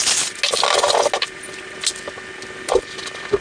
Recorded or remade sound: recorded